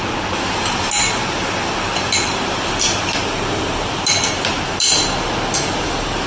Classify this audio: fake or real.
real